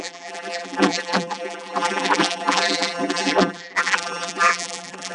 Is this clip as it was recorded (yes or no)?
no